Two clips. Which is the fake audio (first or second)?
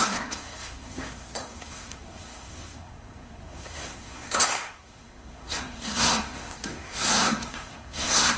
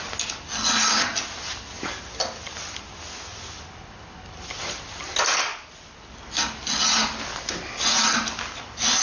first